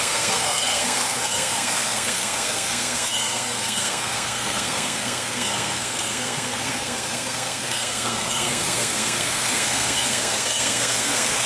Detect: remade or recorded remade